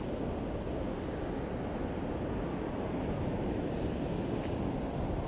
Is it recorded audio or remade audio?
recorded